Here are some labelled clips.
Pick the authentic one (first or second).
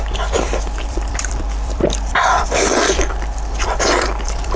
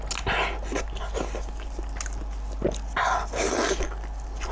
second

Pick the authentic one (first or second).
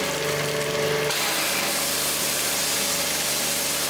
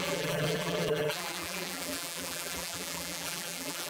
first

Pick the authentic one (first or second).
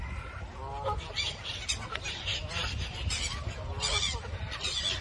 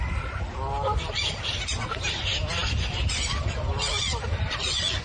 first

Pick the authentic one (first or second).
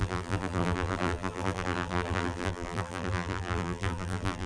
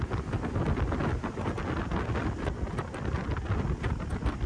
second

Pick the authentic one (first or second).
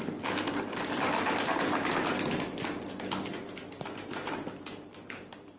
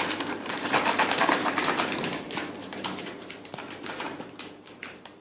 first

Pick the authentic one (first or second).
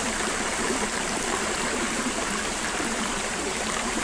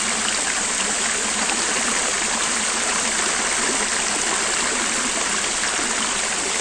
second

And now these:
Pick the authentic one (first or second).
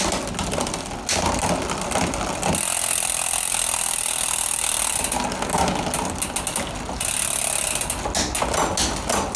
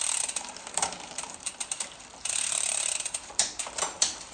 first